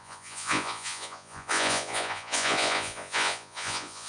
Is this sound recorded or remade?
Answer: remade